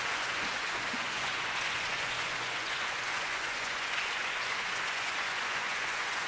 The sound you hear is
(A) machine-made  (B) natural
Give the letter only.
A